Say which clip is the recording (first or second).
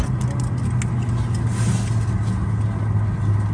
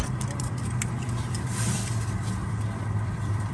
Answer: first